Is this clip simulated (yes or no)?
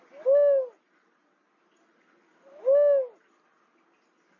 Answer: no